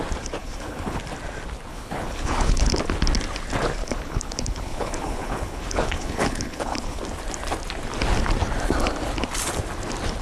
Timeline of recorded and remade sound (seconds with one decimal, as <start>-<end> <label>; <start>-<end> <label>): 0.0-0.4 recorded; 0.4-1.0 remade; 1.0-1.7 recorded; 1.7-2.8 remade; 2.8-3.8 recorded; 3.8-7.0 remade; 7.0-10.2 recorded